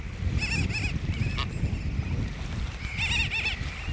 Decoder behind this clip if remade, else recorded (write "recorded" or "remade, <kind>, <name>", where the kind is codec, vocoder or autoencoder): recorded